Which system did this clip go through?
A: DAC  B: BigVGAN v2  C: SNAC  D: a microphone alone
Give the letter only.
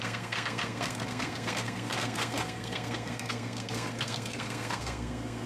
C